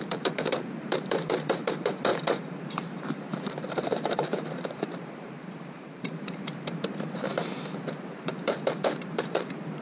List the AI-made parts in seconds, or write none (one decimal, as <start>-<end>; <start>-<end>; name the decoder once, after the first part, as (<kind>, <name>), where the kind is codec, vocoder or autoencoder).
0.0-7.3 (vocoder, BigVGAN v2); 8.2-9.8